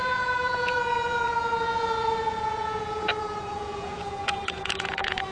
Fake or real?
fake